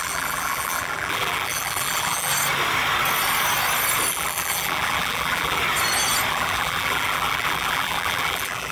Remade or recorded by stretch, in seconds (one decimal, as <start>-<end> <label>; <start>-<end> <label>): 0.0-2.3 remade; 2.3-4.1 recorded; 4.1-5.6 remade; 5.6-6.3 recorded; 6.3-8.7 remade

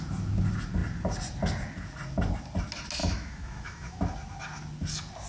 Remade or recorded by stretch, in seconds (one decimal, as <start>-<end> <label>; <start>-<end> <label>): 0.0-3.0 recorded; 3.0-4.0 remade; 4.0-5.3 recorded

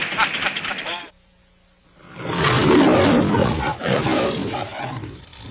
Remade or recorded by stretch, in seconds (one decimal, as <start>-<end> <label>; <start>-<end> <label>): 0.0-3.4 recorded; 3.4-4.0 remade; 4.0-5.5 recorded

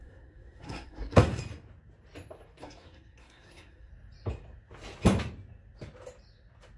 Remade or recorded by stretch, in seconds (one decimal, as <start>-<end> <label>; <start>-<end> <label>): 0.0-1.4 remade; 1.4-2.6 recorded; 2.6-3.9 remade; 3.9-6.8 recorded

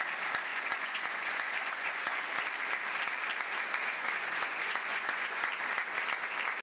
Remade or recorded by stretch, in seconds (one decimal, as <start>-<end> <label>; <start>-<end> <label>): 0.0-0.5 recorded; 0.5-2.2 remade; 2.2-3.8 recorded; 3.8-5.5 remade; 5.5-6.6 recorded

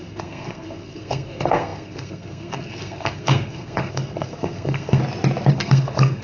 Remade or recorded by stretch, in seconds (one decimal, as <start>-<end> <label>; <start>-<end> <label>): 0.0-5.0 remade; 5.0-5.5 recorded; 5.5-6.2 remade